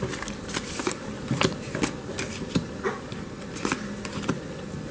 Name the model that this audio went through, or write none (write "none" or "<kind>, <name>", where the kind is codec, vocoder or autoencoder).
none